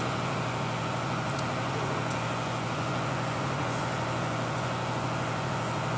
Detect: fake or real fake